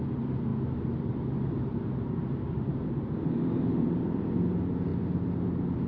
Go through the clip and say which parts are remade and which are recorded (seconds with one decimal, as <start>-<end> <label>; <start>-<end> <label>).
0.0-5.9 recorded